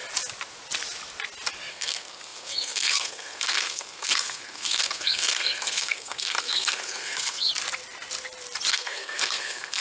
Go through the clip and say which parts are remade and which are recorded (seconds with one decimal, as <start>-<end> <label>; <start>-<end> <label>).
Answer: 0.0-1.7 recorded; 1.7-7.5 remade; 7.5-8.7 recorded; 8.7-9.8 remade